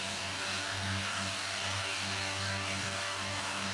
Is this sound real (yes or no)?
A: no